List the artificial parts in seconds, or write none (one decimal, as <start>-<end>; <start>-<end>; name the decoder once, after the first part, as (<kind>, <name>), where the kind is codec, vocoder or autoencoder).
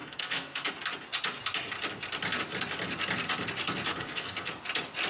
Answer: 0.0-0.7 (codec, SNAC); 3.9-4.5